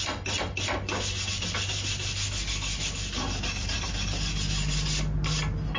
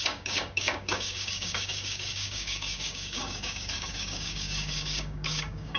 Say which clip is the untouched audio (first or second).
first